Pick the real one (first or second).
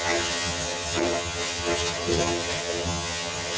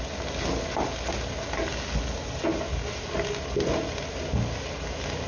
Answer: second